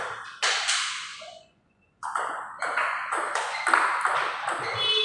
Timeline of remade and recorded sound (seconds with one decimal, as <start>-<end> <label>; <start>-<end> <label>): 0.0-1.1 recorded; 1.1-3.6 remade; 3.6-5.0 recorded